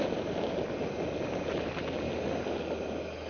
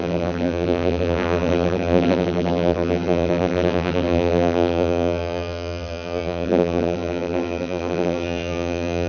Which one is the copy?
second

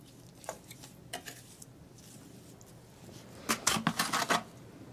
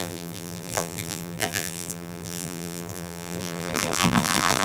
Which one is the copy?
second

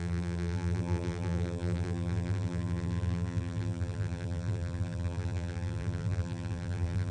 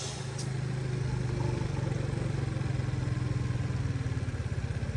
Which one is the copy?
first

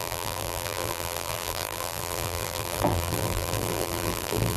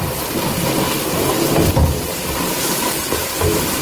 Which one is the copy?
first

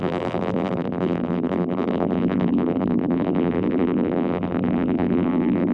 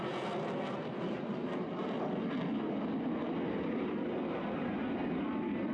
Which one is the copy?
first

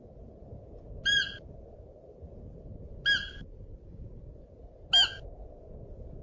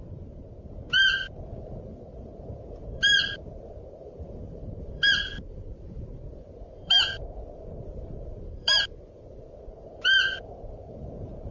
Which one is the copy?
second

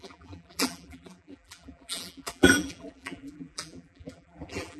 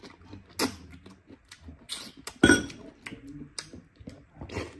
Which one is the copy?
first